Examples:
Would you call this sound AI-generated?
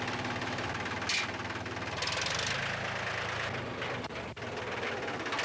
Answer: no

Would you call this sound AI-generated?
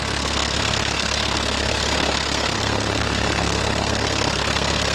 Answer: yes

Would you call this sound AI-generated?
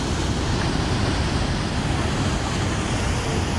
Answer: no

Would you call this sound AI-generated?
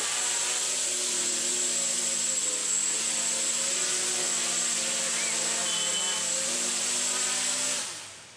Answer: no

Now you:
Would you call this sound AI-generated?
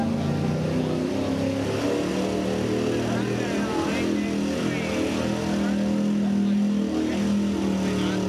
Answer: no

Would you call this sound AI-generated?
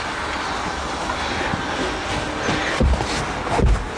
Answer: no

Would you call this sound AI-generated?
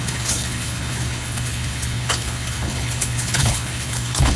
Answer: yes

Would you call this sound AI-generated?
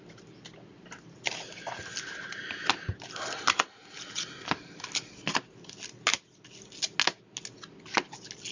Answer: no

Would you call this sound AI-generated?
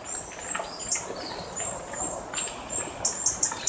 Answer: no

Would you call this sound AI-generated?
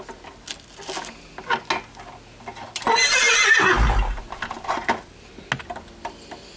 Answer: no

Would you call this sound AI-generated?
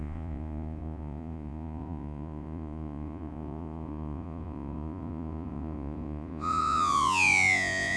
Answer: yes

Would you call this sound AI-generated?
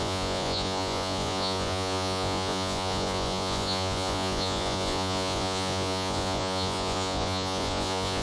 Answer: yes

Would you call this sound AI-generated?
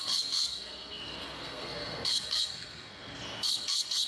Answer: yes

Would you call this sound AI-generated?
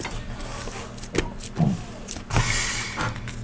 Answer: no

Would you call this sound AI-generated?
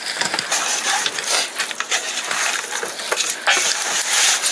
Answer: no